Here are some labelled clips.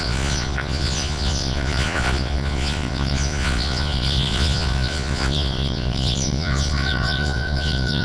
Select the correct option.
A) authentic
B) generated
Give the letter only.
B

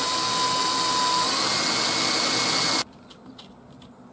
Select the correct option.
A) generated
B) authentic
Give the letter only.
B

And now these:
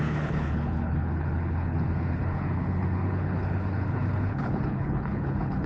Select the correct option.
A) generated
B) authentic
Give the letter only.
A